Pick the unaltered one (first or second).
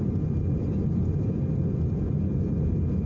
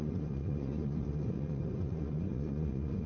first